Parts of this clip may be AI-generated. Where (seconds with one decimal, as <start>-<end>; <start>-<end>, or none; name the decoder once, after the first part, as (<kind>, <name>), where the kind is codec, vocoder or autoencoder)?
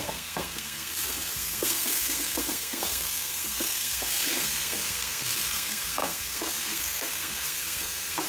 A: 0.0-8.3 (codec, SNAC)